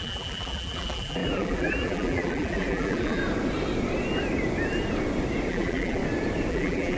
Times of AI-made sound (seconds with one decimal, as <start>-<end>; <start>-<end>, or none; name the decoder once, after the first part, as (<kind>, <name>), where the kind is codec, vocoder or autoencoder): 0.0-3.2 (vocoder, BigVGAN v2); 5.5-6.0; 6.5-7.0